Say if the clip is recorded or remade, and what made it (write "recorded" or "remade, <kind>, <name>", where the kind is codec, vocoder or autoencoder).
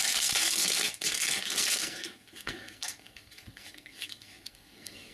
remade, codec, SNAC